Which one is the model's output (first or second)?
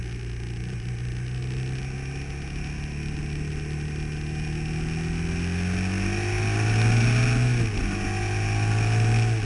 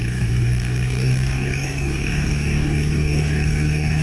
second